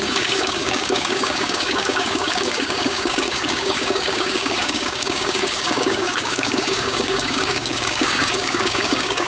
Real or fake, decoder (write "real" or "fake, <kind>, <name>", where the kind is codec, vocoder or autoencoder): fake, codec, DAC